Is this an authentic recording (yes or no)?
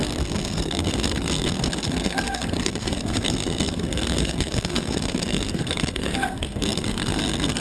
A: no